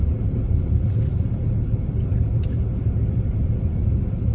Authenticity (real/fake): real